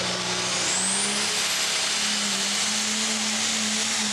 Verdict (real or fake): real